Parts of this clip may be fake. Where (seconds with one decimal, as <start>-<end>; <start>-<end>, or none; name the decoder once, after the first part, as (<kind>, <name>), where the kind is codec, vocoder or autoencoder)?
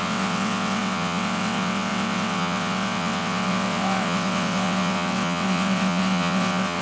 0.0-6.8 (vocoder, WaveNeXt)